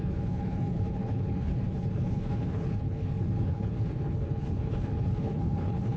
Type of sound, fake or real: fake